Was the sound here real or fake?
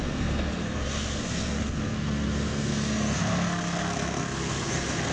fake